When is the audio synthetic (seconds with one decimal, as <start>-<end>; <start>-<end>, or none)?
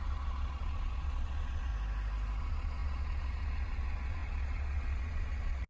0.0-1.7; 2.4-5.7